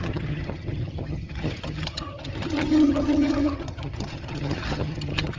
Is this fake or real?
fake